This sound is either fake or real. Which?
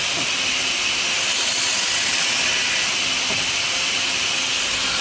real